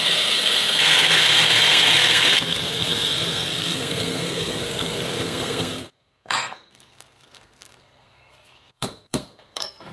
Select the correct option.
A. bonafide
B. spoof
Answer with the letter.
B